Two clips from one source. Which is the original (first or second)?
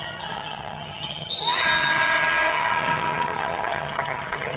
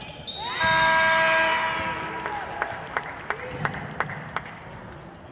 second